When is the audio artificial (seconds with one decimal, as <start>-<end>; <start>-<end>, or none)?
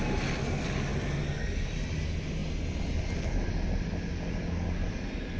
none